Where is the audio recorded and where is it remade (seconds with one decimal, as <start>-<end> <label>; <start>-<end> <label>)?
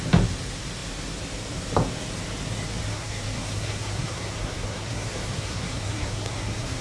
0.0-2.9 recorded; 2.9-6.8 remade